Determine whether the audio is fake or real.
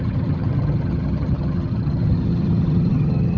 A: fake